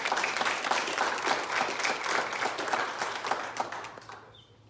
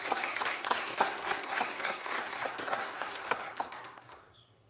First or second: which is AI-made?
second